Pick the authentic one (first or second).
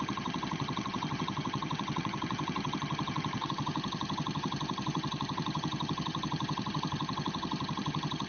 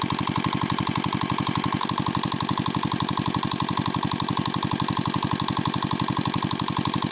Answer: second